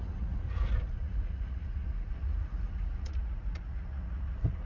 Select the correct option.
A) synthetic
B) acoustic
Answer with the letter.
A